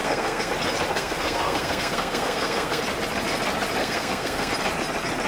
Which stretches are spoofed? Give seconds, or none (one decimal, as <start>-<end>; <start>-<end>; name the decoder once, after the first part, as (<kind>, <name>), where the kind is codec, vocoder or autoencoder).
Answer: 0.0-0.5 (codec, SNAC); 0.9-2.8; 3.8-4.5